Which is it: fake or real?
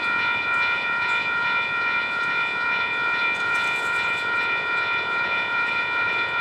fake